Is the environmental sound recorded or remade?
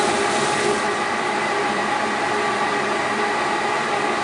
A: remade